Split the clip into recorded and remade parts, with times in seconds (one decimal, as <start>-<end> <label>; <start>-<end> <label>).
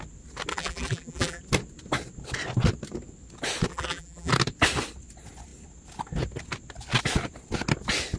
0.0-0.5 recorded; 0.5-1.4 remade; 1.4-3.7 recorded; 3.7-4.3 remade; 4.3-8.2 recorded